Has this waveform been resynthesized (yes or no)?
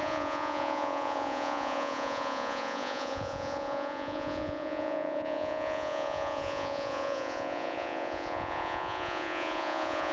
yes